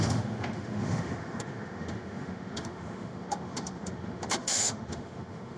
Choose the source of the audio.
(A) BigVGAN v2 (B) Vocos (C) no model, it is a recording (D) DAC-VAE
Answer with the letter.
D